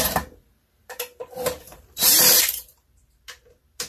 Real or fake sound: fake